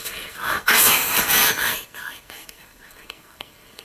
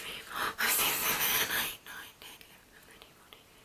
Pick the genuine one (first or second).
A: second